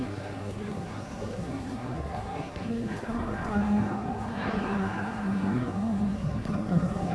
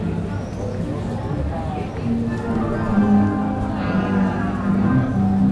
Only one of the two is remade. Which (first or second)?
first